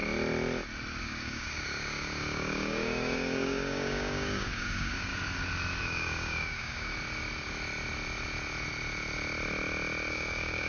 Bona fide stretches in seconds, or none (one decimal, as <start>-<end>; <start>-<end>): 0.0-1.0; 5.1-5.8; 6.9-10.1